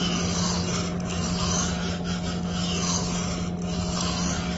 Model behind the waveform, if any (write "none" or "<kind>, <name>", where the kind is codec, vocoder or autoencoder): none